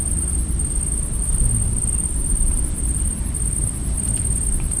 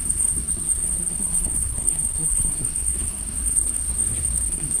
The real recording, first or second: first